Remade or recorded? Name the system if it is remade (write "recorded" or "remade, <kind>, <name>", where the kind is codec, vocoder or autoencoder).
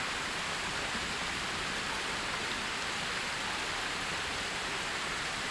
recorded